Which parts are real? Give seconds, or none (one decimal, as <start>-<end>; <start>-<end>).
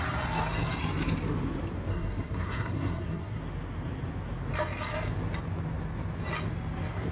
0.0-1.9; 3.4-7.1